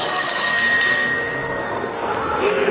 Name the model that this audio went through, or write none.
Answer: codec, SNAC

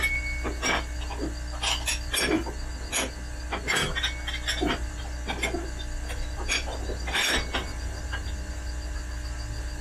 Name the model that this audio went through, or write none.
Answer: none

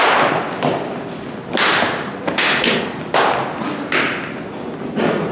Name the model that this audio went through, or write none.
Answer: none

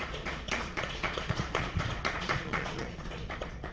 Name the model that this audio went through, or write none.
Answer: vocoder, Vocos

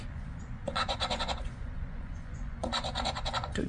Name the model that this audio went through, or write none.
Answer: vocoder, Vocos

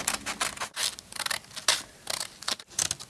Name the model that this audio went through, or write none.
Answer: none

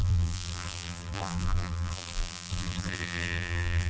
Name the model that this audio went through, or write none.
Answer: vocoder, BigVGAN v2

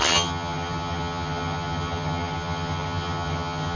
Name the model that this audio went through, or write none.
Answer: vocoder, HiFi-GAN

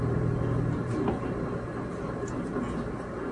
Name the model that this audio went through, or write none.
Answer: none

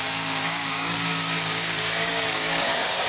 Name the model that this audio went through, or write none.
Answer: codec, DAC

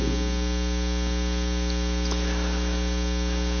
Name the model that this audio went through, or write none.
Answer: none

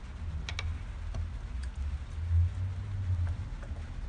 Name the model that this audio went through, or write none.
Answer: none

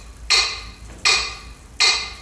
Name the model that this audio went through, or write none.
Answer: none